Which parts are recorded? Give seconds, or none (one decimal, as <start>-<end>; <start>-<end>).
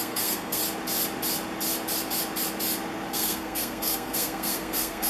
0.6-3.1